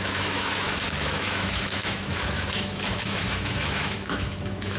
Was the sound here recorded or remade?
remade